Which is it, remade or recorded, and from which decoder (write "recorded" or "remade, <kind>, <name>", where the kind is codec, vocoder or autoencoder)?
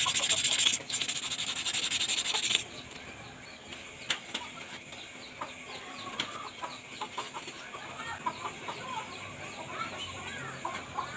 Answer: recorded